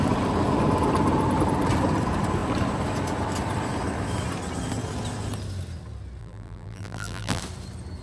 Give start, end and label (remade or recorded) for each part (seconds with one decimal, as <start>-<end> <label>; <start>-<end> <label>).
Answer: 0.0-6.2 recorded; 6.2-7.4 remade; 7.4-8.0 recorded